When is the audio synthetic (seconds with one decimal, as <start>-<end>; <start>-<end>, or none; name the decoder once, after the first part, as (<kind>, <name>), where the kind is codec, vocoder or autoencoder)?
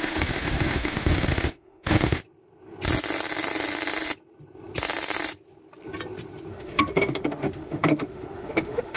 0.0-2.2 (autoencoder, DAC-VAE); 6.5-9.0